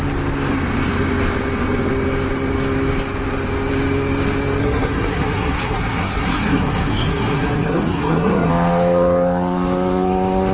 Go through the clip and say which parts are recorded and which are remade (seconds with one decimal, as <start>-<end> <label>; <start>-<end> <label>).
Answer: 0.0-4.6 recorded; 4.6-8.5 remade; 8.5-10.5 recorded